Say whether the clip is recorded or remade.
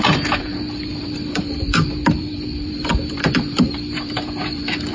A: remade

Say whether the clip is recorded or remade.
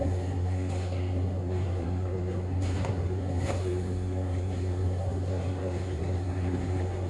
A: remade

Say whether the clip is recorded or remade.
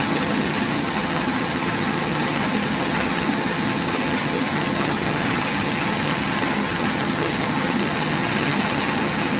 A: remade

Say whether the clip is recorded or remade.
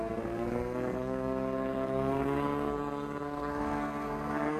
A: remade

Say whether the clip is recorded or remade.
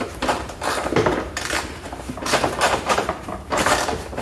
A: remade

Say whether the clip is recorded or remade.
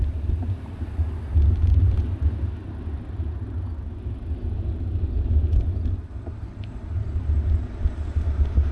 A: recorded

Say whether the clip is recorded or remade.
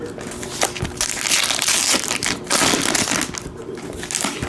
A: recorded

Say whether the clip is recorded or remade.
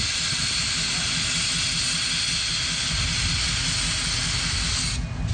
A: recorded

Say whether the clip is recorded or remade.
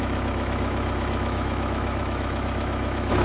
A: remade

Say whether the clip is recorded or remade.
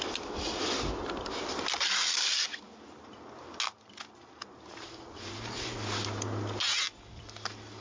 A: recorded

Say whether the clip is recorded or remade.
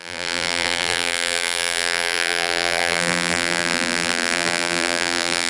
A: remade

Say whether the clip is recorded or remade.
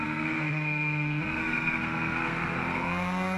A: remade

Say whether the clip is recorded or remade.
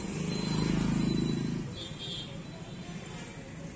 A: recorded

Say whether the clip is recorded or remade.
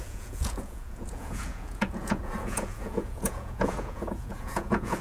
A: remade